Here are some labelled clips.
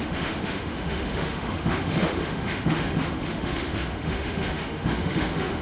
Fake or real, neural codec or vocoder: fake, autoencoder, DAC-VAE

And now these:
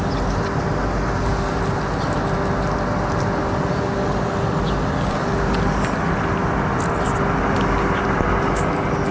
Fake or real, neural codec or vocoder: real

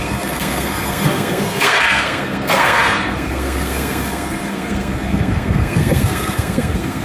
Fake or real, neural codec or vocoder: fake, codec, SNAC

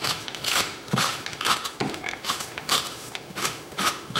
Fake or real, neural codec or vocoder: fake, autoencoder, DAC-VAE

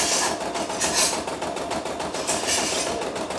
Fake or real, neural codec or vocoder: real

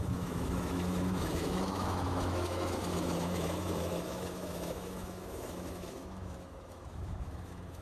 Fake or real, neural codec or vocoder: fake, autoencoder, DAC-VAE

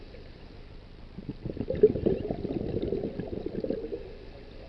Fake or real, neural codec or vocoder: real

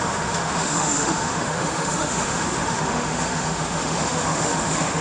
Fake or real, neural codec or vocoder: fake, autoencoder, DAC-VAE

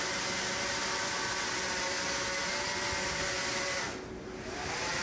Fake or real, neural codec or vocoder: real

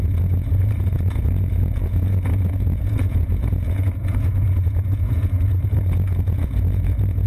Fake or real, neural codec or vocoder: fake, vocoder, Vocos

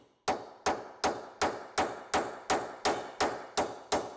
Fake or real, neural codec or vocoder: real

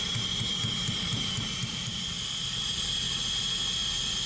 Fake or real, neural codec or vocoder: real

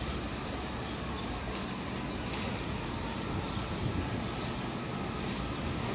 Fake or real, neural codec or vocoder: real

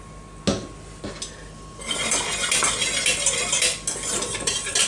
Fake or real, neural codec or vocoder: real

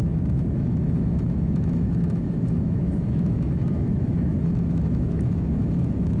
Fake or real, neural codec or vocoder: fake, autoencoder, DAC-VAE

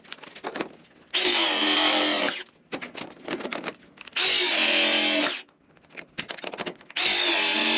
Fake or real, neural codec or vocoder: real